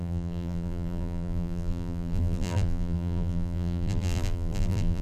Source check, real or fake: fake